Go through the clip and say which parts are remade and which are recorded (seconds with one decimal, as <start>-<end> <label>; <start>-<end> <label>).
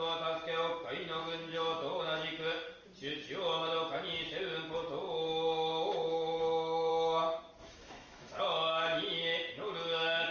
0.0-1.2 recorded; 1.2-2.0 remade; 2.0-5.0 recorded; 5.0-6.9 remade; 6.9-7.6 recorded; 7.6-8.4 remade; 8.4-10.3 recorded